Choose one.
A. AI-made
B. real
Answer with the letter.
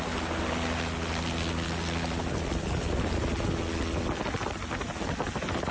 B